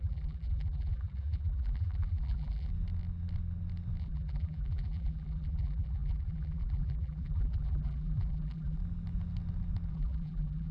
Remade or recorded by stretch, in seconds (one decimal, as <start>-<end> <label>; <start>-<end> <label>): 0.0-2.7 remade; 2.7-4.0 recorded; 4.0-8.8 remade; 8.8-9.9 recorded; 9.9-10.7 remade